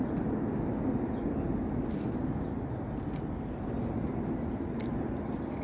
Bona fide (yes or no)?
yes